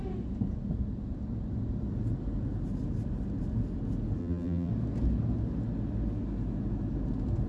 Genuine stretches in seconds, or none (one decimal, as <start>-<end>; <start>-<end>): 0.0-4.2; 4.7-7.5